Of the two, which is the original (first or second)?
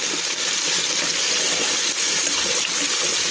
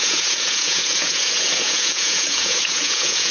first